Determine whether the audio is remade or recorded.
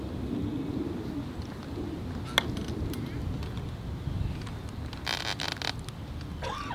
recorded